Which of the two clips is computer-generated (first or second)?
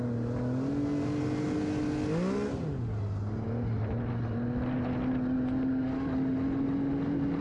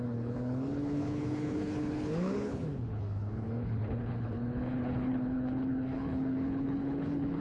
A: second